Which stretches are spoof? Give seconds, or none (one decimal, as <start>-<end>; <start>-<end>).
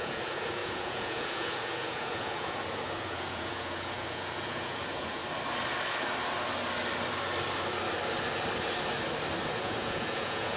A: 0.0-5.2; 9.5-10.6